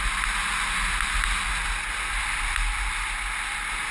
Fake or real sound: real